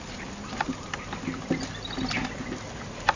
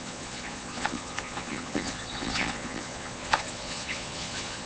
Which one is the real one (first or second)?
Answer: first